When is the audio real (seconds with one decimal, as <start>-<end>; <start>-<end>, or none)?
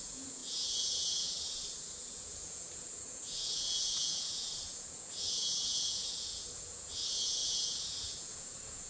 none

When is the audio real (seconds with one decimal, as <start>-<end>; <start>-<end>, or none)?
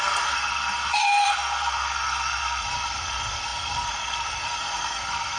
none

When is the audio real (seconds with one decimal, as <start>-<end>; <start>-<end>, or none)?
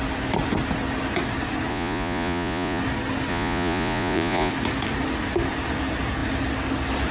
0.0-1.7; 2.8-3.3; 4.5-7.1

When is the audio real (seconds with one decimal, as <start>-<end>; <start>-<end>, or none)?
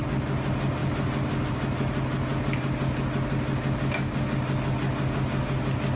0.0-6.0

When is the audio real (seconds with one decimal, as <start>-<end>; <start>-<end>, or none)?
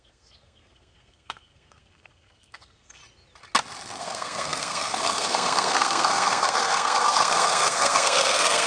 3.0-4.0